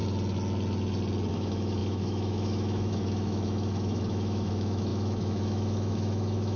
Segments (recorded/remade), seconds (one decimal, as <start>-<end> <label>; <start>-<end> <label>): 0.0-1.3 recorded; 1.3-6.6 remade